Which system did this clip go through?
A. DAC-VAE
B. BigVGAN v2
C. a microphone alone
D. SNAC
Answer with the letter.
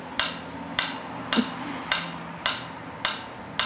C